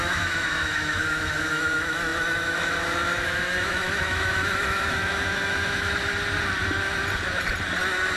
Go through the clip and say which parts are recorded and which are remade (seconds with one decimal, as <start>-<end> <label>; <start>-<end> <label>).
0.0-6.1 remade; 6.1-8.2 recorded